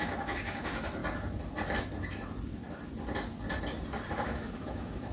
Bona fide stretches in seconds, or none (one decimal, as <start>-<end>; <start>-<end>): 1.0-4.1